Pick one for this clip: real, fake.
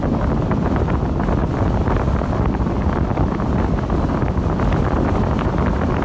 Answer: real